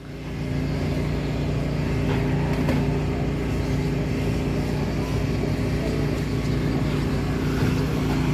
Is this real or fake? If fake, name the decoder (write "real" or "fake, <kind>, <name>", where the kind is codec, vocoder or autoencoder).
real